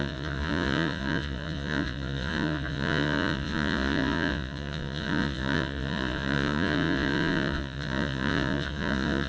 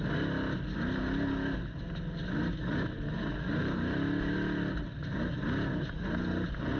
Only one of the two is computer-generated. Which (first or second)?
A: first